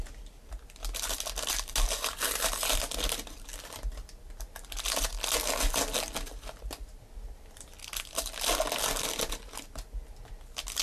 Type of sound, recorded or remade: recorded